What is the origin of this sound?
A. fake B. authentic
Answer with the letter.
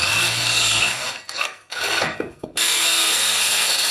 A